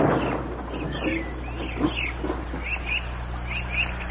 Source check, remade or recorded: recorded